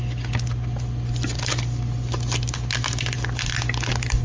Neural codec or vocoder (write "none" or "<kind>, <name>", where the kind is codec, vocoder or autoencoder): none